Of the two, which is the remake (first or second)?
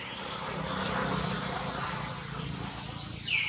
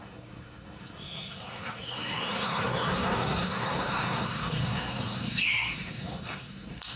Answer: second